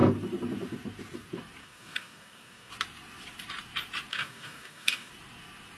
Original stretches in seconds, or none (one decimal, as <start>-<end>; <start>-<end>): 0.0-1.6; 2.7-4.1; 5.1-5.8

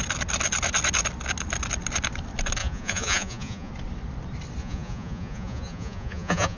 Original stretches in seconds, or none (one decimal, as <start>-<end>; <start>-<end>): 0.0-2.6; 3.7-4.6